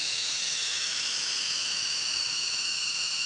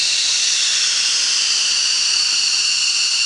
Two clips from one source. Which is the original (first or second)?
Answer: second